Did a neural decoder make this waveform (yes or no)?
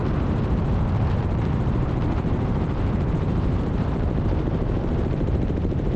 yes